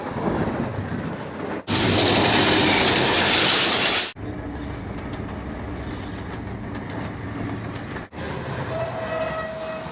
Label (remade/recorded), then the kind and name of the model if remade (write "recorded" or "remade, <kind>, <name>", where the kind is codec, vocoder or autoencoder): recorded